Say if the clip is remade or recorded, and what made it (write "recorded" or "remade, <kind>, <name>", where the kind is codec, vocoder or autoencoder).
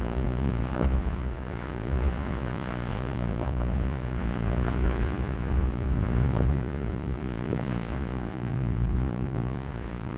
remade, vocoder, Vocos